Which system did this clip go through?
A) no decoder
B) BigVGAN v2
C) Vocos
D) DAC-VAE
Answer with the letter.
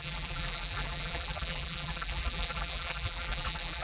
B